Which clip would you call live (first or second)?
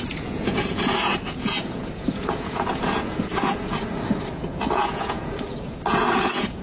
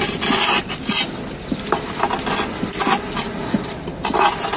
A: second